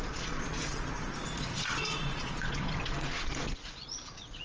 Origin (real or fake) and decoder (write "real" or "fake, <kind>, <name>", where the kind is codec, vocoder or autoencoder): fake, vocoder, Vocos